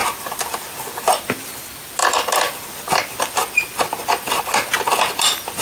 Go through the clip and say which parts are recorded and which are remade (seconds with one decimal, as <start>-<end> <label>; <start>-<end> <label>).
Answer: 0.0-2.0 recorded; 2.0-2.8 remade; 2.8-4.0 recorded; 4.0-4.6 remade; 4.6-5.6 recorded